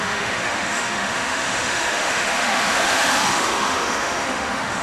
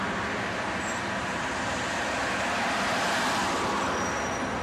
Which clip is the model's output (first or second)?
first